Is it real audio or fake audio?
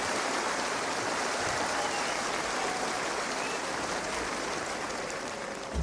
fake